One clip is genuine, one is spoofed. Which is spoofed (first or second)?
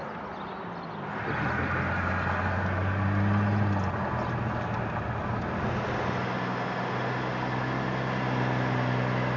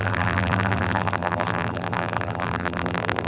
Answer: second